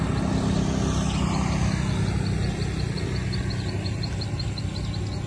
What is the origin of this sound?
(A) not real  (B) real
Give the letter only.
B